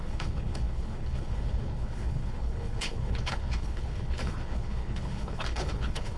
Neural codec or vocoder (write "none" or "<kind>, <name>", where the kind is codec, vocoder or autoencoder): codec, HILCodec